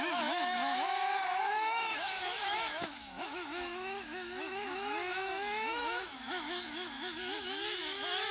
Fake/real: fake